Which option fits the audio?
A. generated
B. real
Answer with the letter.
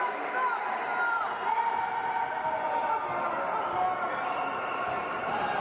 B